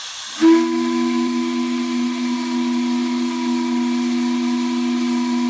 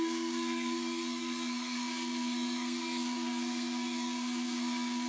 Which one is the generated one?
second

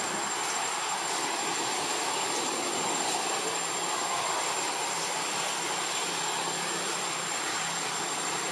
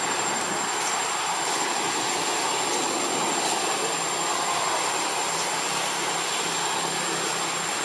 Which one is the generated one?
first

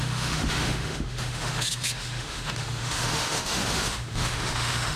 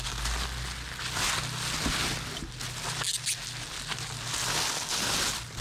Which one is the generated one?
first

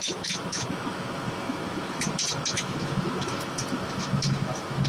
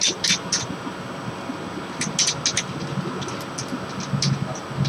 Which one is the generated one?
first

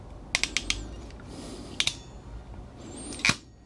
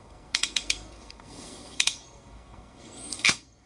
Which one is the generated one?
second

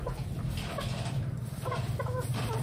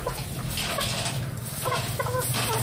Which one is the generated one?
first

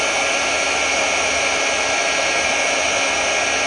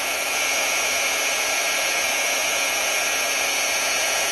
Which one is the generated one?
second